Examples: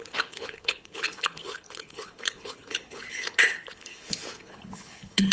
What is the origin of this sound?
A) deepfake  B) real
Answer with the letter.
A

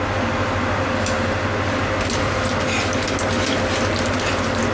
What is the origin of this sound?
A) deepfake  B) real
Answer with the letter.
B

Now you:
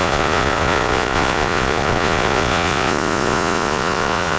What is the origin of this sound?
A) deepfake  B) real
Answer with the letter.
A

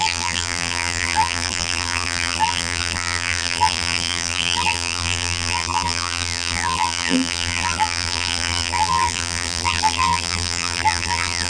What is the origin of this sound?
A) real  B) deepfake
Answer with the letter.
B